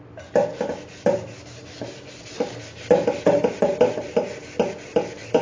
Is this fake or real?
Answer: real